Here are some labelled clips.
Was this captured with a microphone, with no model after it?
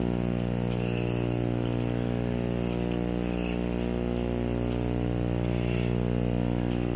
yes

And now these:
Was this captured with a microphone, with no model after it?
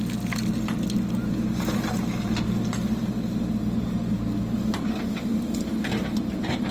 yes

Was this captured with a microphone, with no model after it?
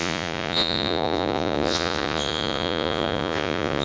no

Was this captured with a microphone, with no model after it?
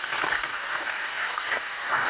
no